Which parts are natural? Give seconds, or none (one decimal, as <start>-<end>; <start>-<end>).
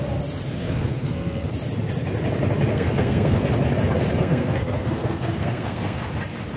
0.0-0.5; 1.5-2.7; 3.5-4.2; 6.1-6.6